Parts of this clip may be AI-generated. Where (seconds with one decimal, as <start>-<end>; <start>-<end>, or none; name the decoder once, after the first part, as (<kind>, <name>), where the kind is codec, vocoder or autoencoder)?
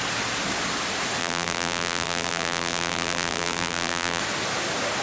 1.2-4.2 (vocoder, BigVGAN v2)